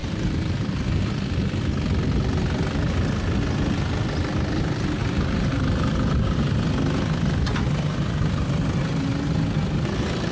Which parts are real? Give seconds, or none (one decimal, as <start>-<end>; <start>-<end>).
1.0-5.0; 6.7-10.3